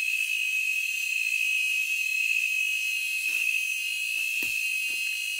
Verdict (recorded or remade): remade